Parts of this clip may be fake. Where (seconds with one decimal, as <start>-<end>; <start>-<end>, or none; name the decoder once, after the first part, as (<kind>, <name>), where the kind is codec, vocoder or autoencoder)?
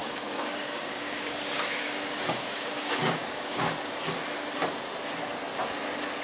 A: 0.0-3.7 (codec, DAC)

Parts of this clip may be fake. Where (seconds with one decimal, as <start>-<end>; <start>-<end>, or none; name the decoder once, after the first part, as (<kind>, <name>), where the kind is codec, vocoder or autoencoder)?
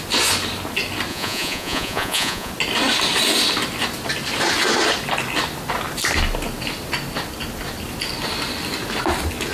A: 1.1-2.5 (vocoder, Vocos)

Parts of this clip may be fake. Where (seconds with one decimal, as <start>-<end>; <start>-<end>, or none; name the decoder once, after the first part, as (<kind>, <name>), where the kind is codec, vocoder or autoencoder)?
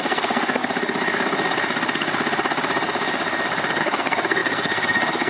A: 0.0-0.6 (codec, SNAC); 3.8-5.3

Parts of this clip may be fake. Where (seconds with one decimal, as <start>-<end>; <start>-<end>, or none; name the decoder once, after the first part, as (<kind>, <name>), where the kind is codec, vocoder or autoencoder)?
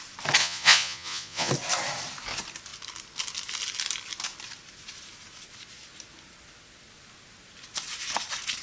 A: 0.4-1.5 (vocoder, Vocos)